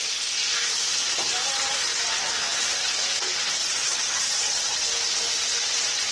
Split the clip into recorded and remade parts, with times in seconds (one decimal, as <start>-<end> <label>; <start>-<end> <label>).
0.0-3.6 recorded; 3.6-4.7 remade; 4.7-6.1 recorded